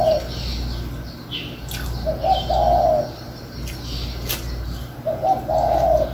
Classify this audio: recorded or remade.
recorded